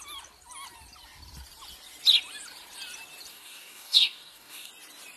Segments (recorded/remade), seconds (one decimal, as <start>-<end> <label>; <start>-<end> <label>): 0.0-3.3 recorded; 3.3-4.7 remade; 4.7-5.2 recorded